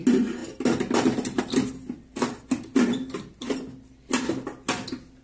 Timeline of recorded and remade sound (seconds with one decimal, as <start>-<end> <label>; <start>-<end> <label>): 0.0-5.2 recorded